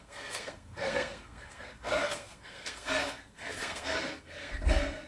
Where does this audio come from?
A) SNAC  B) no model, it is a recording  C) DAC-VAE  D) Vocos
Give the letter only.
A